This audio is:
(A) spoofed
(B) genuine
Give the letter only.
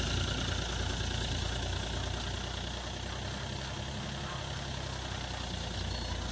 B